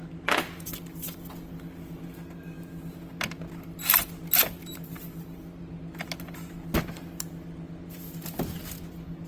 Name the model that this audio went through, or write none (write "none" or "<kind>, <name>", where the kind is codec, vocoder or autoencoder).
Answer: none